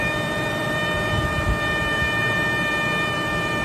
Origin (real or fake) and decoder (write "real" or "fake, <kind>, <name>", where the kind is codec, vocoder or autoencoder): fake, vocoder, BigVGAN v2